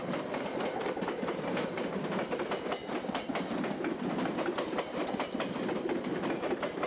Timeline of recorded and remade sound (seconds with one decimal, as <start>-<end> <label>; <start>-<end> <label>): 0.0-6.9 recorded